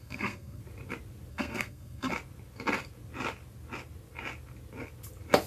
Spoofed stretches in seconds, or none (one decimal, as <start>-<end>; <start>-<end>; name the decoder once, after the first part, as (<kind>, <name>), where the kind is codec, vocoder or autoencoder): 0.0-0.6 (codec, SNAC); 1.3-2.1